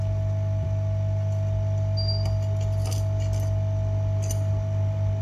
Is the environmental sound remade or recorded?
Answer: recorded